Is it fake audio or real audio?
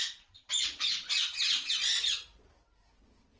real